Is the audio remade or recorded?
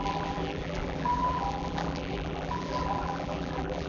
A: remade